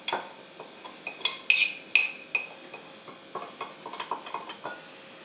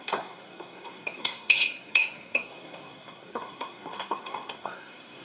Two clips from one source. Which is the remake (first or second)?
second